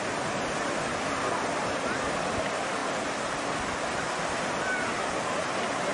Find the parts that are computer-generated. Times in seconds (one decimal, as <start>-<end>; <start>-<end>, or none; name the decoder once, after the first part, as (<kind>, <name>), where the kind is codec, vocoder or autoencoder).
none